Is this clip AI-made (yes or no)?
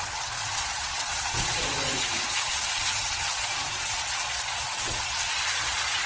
yes